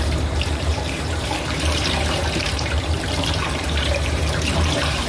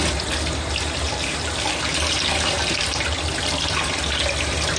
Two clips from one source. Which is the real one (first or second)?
second